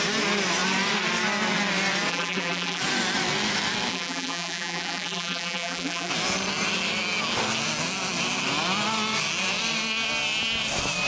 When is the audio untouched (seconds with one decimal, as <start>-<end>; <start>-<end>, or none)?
0.0-2.1; 2.8-3.9; 6.1-11.1